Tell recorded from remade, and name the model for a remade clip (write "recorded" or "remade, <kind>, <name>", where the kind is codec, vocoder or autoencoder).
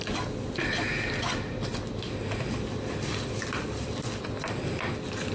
remade, vocoder, BigVGAN v2